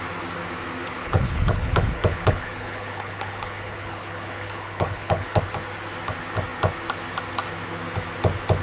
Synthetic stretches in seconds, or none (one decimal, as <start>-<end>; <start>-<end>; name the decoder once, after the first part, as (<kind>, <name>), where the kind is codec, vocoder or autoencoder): 1.0-5.4 (codec, HILCodec)